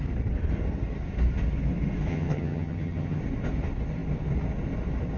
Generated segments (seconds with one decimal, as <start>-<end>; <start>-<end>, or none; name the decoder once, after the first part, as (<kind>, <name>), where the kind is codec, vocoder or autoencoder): 2.1-3.2 (vocoder, HiFi-GAN)